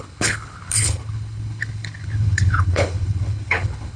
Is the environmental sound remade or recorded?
remade